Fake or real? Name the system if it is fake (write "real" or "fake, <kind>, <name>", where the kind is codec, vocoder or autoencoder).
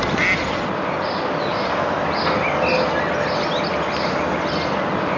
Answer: real